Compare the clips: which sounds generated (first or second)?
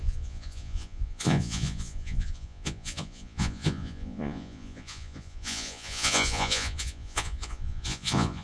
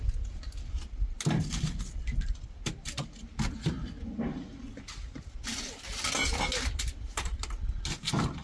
first